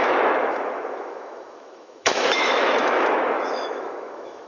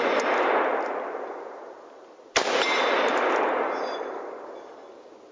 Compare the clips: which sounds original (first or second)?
second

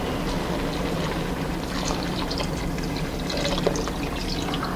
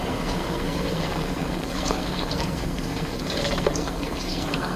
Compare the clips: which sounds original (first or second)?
first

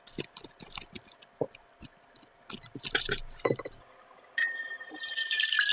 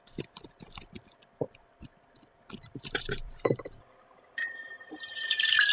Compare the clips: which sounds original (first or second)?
first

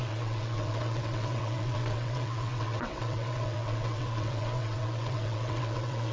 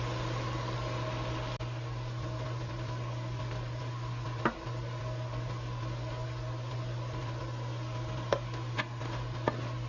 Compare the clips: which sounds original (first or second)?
second